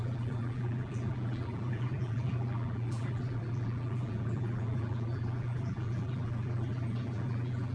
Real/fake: fake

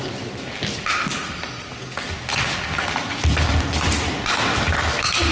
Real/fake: real